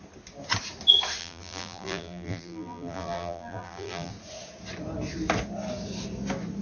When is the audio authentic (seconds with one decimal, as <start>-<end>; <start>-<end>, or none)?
0.0-1.2; 4.1-6.6